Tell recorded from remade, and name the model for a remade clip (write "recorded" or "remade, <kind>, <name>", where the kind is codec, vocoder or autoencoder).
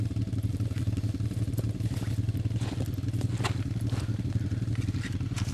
recorded